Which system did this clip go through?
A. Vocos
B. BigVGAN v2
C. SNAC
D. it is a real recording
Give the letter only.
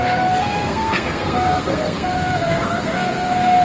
C